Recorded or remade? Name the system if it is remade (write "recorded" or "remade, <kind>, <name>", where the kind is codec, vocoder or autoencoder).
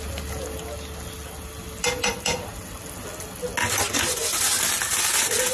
recorded